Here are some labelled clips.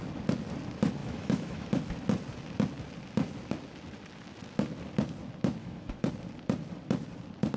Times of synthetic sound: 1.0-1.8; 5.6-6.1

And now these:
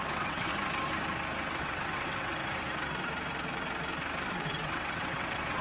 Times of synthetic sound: 0.0-0.5; 1.6-2.4; 4.3-5.6

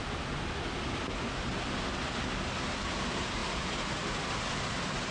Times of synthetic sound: none

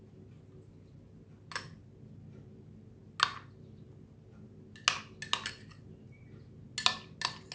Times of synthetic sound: none

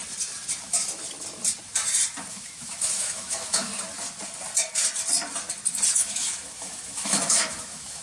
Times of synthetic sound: 0.6-1.0; 2.3-3.7; 5.9-8.0

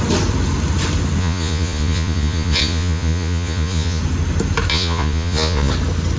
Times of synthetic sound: 1.2-4.0; 4.7-5.7

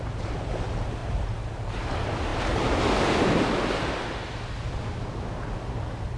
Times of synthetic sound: 1.0-1.9

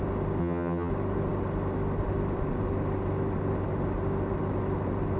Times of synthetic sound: 0.4-0.9